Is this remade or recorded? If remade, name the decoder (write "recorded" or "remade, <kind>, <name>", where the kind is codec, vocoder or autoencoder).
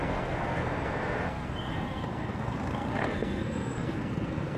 remade, codec, SNAC